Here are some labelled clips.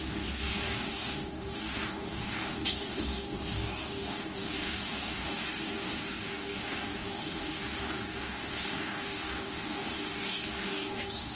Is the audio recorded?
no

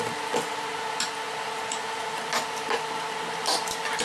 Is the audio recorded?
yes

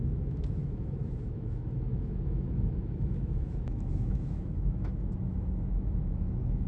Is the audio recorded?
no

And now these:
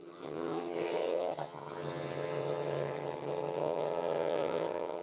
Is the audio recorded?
no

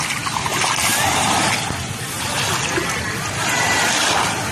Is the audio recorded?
yes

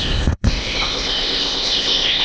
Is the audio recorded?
no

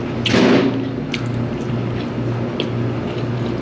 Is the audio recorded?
yes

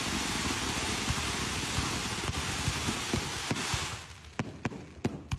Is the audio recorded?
yes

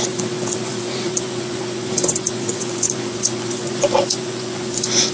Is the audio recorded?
no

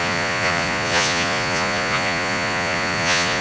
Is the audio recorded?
no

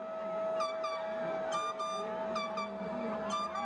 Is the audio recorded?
yes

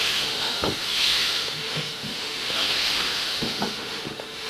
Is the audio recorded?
no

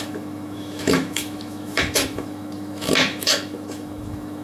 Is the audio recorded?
no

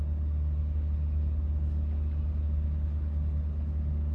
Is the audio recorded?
yes